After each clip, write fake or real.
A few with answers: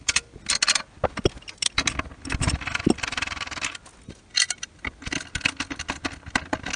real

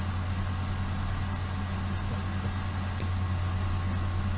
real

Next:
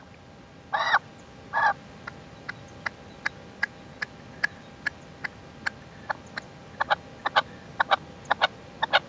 real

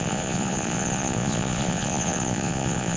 fake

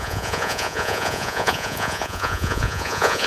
fake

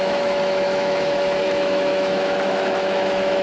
fake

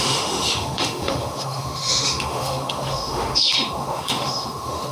fake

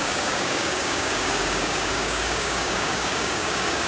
fake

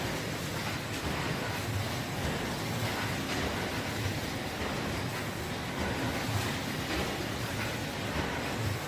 real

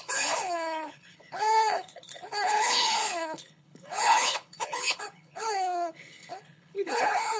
fake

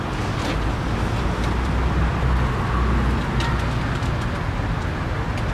real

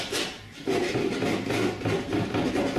real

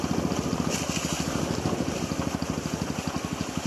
real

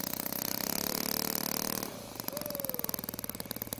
real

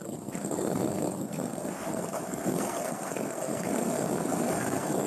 fake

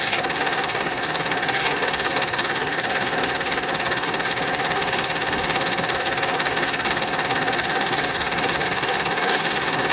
fake